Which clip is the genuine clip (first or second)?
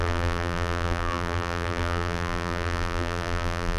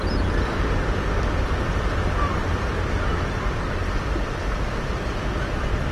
second